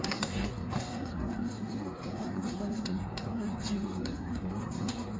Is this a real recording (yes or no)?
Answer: no